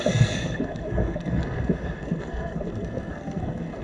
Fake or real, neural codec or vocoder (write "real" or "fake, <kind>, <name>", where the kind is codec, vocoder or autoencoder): fake, codec, SNAC